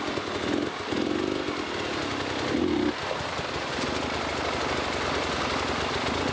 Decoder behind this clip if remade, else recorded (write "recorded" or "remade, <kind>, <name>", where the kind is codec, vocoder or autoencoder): recorded